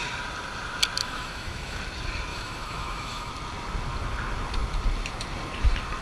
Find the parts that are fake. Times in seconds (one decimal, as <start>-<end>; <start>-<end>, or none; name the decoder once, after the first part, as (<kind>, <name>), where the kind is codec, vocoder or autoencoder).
1.0-1.8 (autoencoder, DAC-VAE); 2.3-3.3